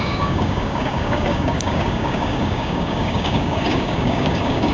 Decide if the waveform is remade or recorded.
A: remade